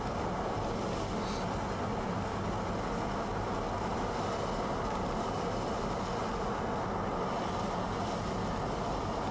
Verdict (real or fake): real